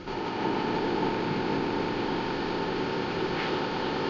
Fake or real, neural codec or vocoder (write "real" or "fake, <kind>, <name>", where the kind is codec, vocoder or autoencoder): fake, codec, ZipCodec